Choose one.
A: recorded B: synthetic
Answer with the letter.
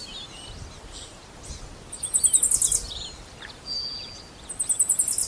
A